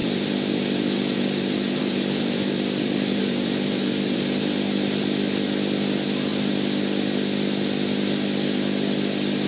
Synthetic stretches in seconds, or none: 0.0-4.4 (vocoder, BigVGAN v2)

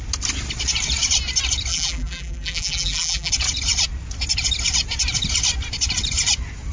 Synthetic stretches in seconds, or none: 1.7-3.3 (vocoder, BigVGAN v2)

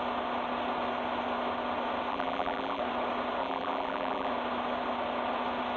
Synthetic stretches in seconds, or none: 2.1-2.8 (vocoder, BigVGAN v2); 3.4-4.3

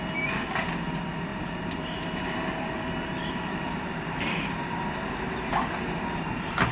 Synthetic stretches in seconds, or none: 1.3-4.7 (vocoder, BigVGAN v2)

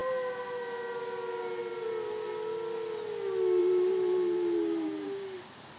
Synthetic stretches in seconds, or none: 0.0-0.6 (vocoder, BigVGAN v2); 1.6-2.3; 3.6-5.8

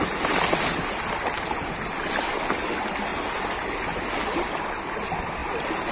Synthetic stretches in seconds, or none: 3.1-4.6 (vocoder, BigVGAN v2); 5.4-5.9

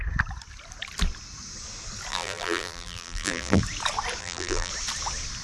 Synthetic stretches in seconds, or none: 2.1-3.6 (vocoder, BigVGAN v2); 4.2-4.7